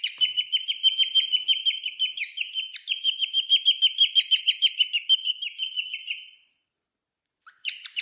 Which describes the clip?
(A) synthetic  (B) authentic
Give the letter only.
B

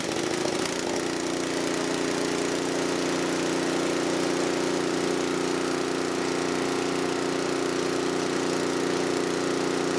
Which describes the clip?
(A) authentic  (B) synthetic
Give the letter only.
A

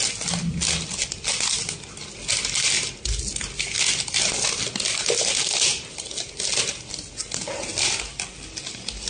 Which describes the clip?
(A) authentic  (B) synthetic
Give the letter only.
A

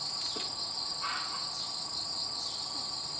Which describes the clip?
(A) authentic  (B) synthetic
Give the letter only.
A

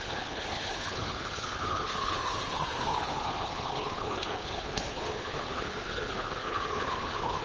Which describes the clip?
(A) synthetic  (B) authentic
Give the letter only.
A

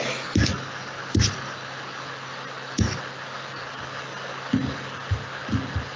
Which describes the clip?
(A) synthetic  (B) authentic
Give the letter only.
B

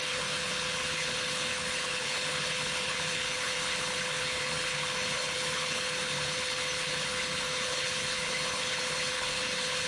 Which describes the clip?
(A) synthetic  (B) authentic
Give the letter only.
A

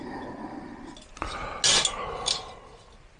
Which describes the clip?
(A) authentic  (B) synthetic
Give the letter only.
A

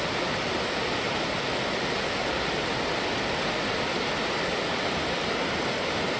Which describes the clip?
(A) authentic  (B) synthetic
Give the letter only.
A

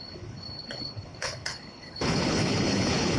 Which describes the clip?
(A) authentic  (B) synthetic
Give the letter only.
B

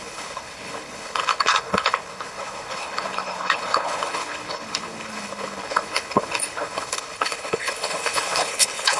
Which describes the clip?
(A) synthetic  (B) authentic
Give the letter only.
A